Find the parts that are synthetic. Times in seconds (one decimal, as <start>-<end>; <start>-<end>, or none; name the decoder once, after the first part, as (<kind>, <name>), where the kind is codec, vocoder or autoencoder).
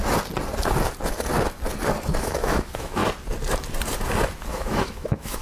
2.2-3.0 (autoencoder, DAC-VAE); 4.5-5.4